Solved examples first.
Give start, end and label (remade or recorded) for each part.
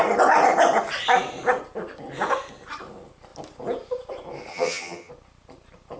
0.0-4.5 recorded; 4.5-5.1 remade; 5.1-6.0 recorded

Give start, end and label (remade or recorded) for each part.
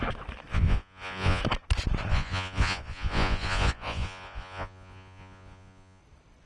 0.0-0.5 recorded; 0.5-1.4 remade; 1.4-2.1 recorded; 2.1-6.0 remade; 6.0-6.5 recorded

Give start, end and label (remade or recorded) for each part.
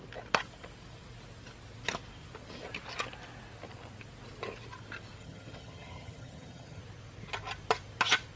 0.0-5.2 recorded; 5.2-6.8 remade; 6.8-8.4 recorded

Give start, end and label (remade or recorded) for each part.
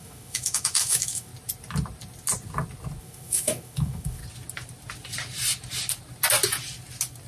0.0-1.3 remade; 1.3-3.0 recorded; 3.0-4.2 remade; 4.2-7.3 recorded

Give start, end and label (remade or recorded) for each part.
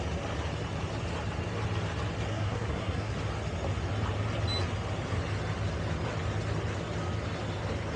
0.0-2.3 recorded; 2.3-3.1 remade; 3.1-8.0 recorded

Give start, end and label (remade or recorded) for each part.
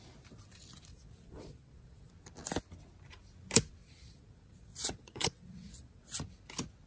0.0-0.9 recorded; 0.9-2.1 remade; 2.1-3.8 recorded; 3.8-6.0 remade; 6.0-6.9 recorded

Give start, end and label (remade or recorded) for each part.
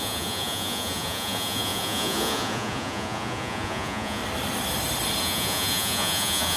0.0-4.2 remade; 4.2-5.2 recorded; 5.2-6.6 remade